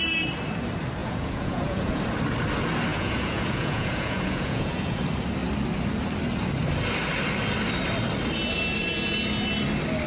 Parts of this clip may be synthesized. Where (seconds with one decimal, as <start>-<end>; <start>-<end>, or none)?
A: 1.0-2.0; 2.9-5.0